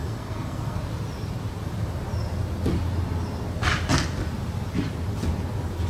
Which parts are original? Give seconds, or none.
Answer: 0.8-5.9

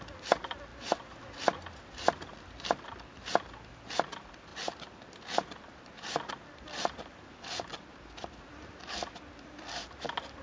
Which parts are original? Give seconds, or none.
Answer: 0.0-10.4

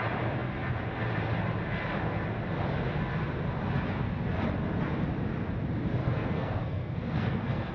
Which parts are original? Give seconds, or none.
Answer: 0.0-6.0